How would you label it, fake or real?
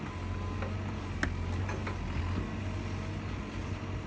real